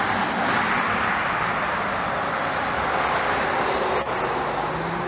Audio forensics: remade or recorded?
recorded